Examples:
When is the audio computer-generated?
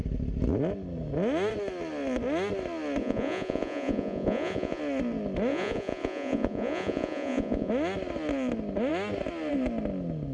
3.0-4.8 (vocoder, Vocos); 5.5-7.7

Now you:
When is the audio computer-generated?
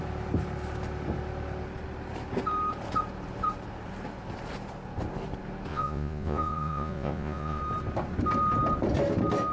5.7-7.6 (vocoder, Vocos)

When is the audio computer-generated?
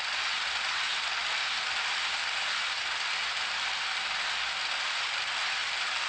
none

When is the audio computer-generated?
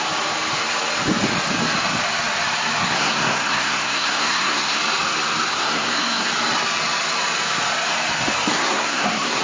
2.8-4.8 (codec, SNAC); 5.5-6.3; 8.5-9.4